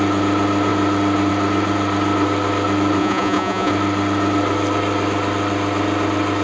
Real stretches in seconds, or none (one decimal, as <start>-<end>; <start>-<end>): 0.0-3.0; 3.7-6.4